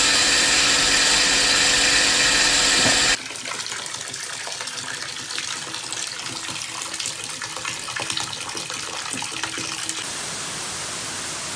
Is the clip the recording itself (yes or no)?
yes